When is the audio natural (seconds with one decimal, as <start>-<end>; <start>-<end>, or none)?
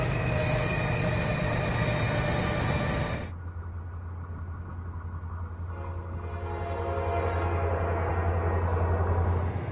0.0-0.4; 1.1-9.7